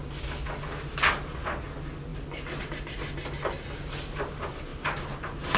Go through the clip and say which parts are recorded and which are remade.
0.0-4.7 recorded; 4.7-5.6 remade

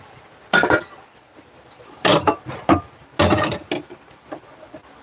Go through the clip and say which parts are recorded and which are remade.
0.0-5.0 recorded

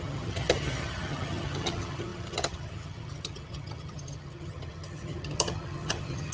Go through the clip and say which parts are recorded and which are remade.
0.0-6.3 remade

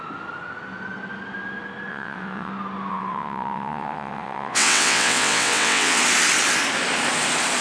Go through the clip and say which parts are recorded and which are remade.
0.0-1.9 recorded; 1.9-2.5 remade; 2.5-2.9 recorded; 2.9-6.0 remade; 6.0-7.6 recorded